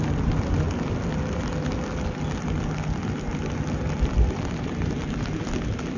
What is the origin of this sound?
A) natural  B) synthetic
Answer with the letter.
A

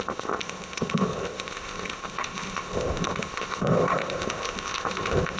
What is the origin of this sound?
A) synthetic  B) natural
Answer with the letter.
A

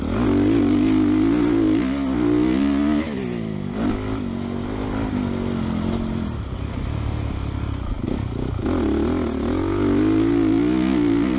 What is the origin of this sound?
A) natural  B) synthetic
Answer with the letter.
A